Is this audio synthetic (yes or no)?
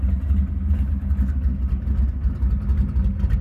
no